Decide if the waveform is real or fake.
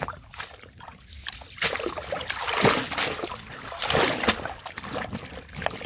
real